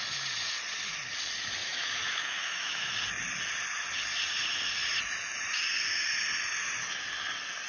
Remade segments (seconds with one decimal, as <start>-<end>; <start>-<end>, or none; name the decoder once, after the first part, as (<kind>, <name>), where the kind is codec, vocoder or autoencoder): 1.6-2.9 (autoencoder, DAC-VAE)